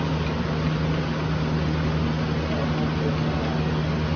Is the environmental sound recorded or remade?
recorded